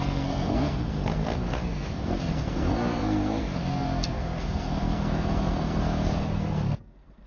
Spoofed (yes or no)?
yes